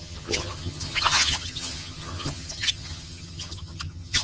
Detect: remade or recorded remade